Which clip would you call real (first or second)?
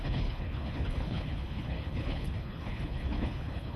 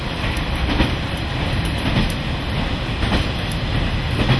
second